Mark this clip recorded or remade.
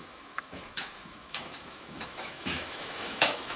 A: remade